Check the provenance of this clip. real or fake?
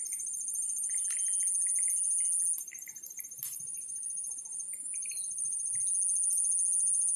real